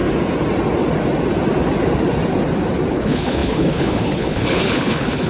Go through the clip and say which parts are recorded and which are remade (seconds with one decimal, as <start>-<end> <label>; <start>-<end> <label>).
0.0-2.9 recorded; 2.9-5.3 remade